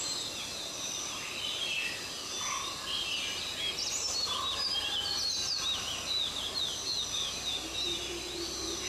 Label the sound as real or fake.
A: real